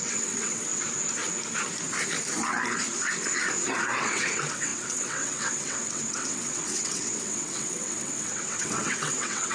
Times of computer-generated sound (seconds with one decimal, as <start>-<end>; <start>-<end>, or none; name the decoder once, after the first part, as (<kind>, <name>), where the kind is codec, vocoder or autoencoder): 0.0-0.7 (vocoder, WaveNeXt); 4.0-9.5